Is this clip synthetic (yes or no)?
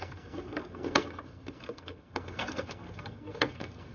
yes